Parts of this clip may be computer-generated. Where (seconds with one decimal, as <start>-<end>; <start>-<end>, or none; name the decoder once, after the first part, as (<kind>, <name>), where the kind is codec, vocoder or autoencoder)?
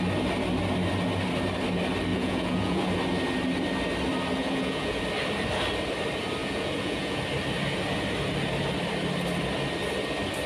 2.1-2.9 (vocoder, Vocos); 4.4-5.0; 6.4-7.2